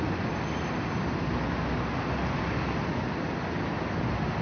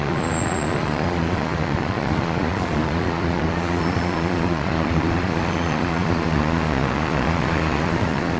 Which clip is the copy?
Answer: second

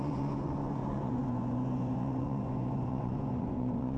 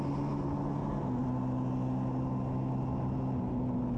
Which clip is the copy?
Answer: first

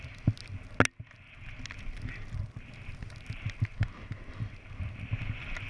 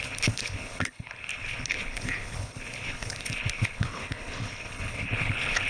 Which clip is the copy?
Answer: second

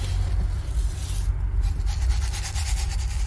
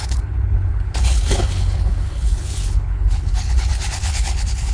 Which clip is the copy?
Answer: second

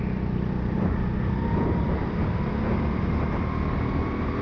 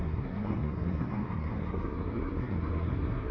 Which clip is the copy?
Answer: second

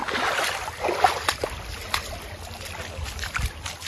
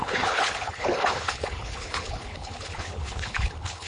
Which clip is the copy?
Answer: second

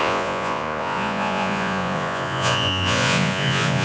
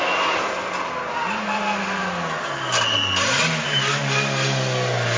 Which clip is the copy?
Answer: first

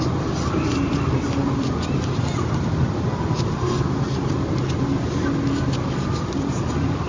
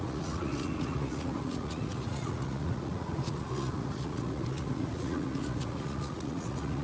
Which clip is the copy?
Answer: second